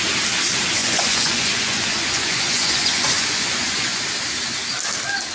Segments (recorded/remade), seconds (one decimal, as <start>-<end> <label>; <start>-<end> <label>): 0.0-0.8 recorded; 0.8-4.0 remade; 4.0-5.3 recorded